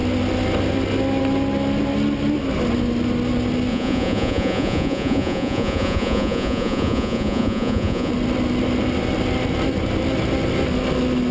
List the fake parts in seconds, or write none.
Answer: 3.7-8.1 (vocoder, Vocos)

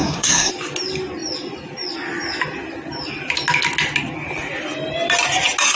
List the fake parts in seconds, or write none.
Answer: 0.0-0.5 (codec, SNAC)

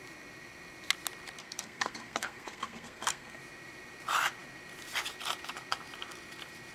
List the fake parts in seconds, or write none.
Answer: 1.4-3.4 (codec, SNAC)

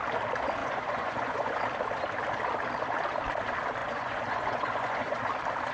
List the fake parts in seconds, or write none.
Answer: 0.6-1.6 (vocoder, Vocos); 3.8-5.2